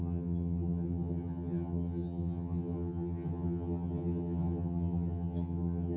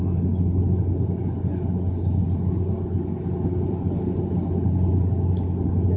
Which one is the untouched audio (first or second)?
second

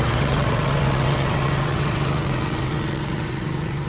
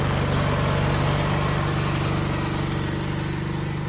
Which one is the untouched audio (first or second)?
second